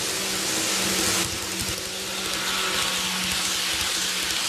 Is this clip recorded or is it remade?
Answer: recorded